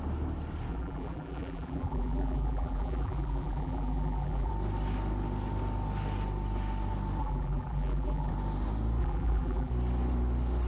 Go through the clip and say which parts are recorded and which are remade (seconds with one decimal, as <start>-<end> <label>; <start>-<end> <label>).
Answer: 0.0-0.7 recorded; 0.7-4.5 remade; 4.5-7.2 recorded; 7.2-8.3 remade; 8.3-9.0 recorded; 9.0-9.7 remade; 9.7-10.7 recorded